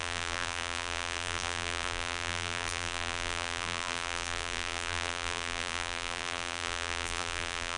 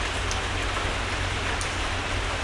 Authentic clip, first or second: second